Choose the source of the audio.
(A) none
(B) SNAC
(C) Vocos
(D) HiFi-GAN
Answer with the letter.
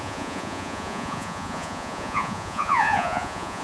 C